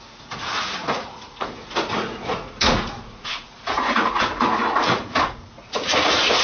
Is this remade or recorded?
remade